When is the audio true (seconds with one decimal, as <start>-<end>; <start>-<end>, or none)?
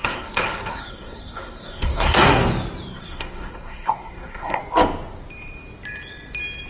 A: 2.4-3.0; 4.6-6.7